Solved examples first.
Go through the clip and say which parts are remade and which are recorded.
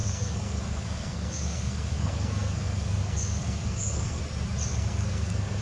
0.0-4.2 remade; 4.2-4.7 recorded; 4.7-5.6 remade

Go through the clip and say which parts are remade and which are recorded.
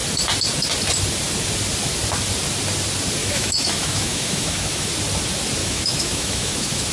0.0-3.2 recorded; 3.2-4.9 remade; 4.9-5.6 recorded; 5.6-6.9 remade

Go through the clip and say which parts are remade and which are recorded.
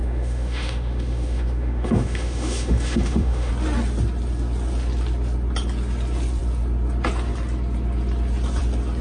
0.0-3.5 remade; 3.5-9.0 recorded